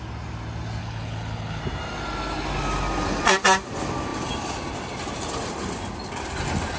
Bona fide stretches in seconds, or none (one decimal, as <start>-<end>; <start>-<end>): 0.0-0.8; 1.6-6.8

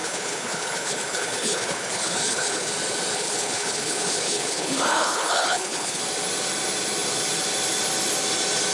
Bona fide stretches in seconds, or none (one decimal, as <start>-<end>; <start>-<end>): 2.7-3.1; 6.0-8.7